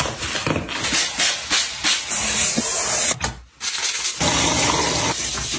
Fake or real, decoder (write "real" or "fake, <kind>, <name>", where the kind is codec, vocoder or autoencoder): real